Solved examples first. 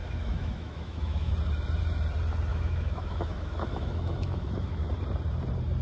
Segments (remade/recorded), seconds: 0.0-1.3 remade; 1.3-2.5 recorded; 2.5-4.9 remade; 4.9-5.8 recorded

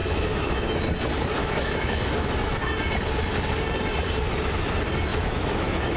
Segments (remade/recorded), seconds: 0.0-0.8 remade; 0.8-1.4 recorded; 1.4-2.0 remade; 2.0-5.1 recorded; 5.1-6.0 remade

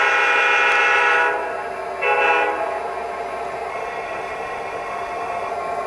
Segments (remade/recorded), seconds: 0.0-3.7 recorded; 3.7-5.5 remade; 5.5-5.9 recorded

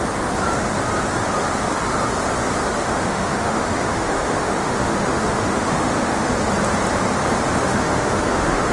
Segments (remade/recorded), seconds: 0.0-2.7 recorded; 2.7-6.3 remade; 6.3-7.6 recorded; 7.6-8.7 remade

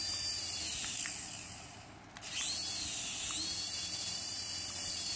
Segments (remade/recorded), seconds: 0.0-5.2 recorded